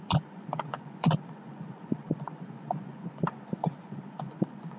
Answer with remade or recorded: remade